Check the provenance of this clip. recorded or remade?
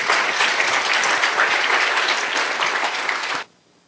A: recorded